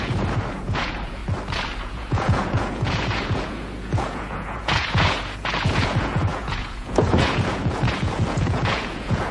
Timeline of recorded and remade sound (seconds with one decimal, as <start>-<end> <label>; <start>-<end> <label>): 0.0-1.2 remade; 1.2-1.8 recorded; 1.8-9.3 remade